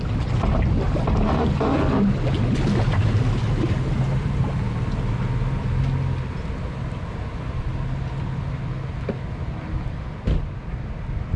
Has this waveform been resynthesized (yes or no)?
no